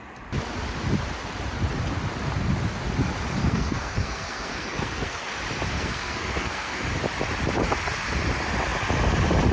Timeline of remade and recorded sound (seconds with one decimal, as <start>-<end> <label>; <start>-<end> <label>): 0.0-3.4 recorded; 3.4-5.3 remade; 5.3-5.7 recorded; 5.7-6.8 remade; 6.8-9.5 recorded